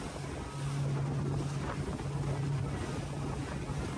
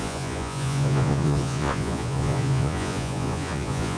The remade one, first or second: second